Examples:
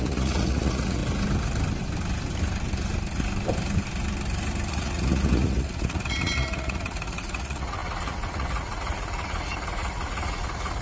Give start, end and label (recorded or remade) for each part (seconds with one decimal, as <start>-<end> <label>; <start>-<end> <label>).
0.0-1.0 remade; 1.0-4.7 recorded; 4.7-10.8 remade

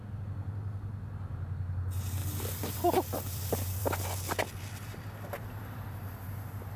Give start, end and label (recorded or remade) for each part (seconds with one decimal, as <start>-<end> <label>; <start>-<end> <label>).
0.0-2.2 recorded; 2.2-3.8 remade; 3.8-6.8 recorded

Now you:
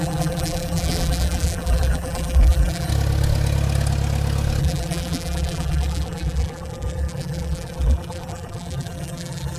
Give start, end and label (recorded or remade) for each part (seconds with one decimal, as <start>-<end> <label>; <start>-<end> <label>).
0.0-2.9 remade; 2.9-4.6 recorded; 4.6-9.6 remade

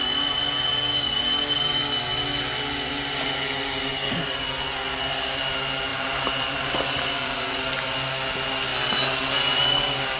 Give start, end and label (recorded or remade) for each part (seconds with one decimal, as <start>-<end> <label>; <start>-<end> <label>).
0.0-5.9 recorded; 5.9-6.7 remade; 6.7-10.2 recorded

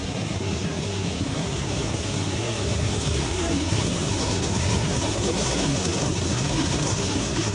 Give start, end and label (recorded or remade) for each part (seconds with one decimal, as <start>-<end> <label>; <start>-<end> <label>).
0.0-7.5 remade

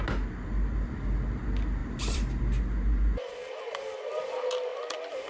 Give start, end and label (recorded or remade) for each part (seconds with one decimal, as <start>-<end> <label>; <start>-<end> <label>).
0.0-1.8 recorded; 1.8-2.4 remade; 2.4-4.7 recorded; 4.7-5.3 remade

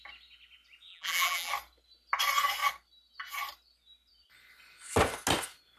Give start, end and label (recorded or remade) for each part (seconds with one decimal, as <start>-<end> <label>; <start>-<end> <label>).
0.0-0.9 recorded; 0.9-1.5 remade; 1.5-5.8 recorded